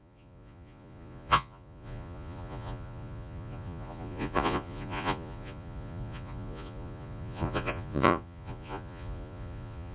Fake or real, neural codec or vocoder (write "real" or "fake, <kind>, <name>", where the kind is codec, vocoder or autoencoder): fake, vocoder, Vocos